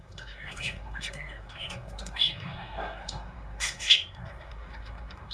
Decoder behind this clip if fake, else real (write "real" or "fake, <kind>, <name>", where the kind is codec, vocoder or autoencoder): fake, codec, SNAC